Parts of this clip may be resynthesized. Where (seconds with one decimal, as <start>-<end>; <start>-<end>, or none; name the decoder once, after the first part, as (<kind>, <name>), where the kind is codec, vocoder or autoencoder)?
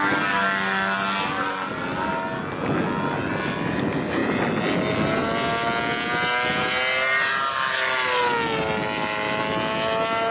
none